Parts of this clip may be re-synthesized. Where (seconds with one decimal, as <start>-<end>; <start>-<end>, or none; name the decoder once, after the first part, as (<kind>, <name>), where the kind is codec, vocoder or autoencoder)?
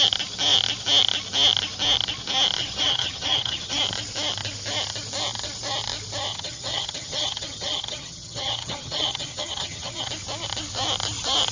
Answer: 2.6-3.8 (vocoder, HiFi-GAN); 6.3-10.1